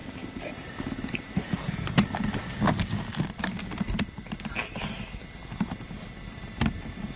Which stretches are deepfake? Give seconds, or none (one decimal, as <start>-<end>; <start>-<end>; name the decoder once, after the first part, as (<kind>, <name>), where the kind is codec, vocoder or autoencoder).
none